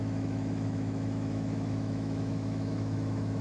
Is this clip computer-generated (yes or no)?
yes